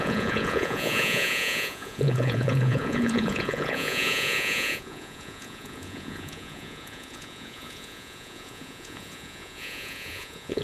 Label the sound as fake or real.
fake